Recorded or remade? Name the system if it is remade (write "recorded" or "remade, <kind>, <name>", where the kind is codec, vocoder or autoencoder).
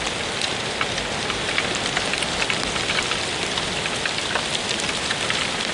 recorded